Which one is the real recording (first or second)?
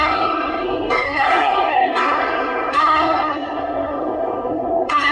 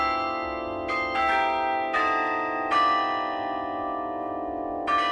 second